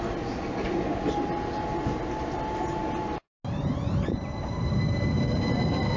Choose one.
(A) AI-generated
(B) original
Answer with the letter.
B